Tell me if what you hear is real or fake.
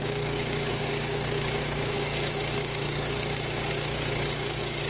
fake